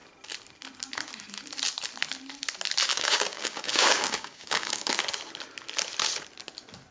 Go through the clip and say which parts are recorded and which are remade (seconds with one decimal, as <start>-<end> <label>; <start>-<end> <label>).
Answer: 0.0-2.9 recorded; 2.9-4.9 remade; 4.9-6.9 recorded